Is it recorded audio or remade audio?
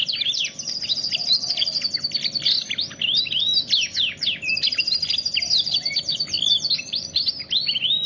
recorded